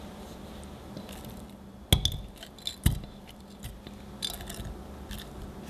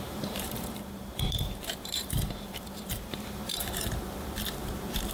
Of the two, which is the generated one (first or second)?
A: second